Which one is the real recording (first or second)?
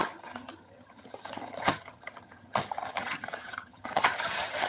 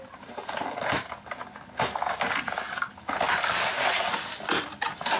second